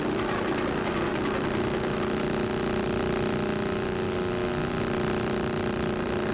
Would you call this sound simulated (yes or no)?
no